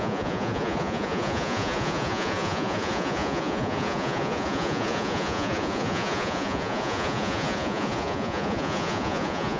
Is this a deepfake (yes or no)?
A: yes